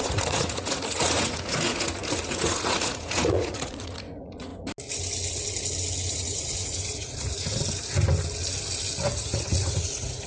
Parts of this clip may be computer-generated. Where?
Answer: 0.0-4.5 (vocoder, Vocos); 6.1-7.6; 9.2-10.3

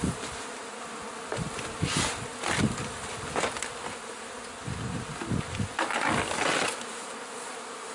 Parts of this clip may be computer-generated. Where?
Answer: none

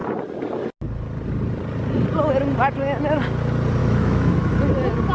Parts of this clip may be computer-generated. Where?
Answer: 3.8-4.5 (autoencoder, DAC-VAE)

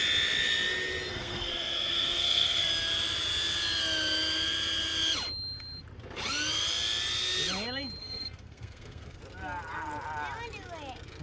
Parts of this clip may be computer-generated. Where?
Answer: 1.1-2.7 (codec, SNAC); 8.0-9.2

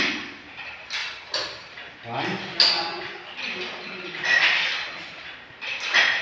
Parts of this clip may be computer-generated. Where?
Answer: none

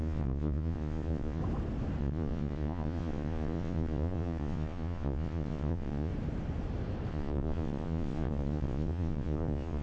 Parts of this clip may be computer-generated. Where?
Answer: 0.0-1.4 (vocoder, Vocos); 2.0-6.1; 7.1-9.8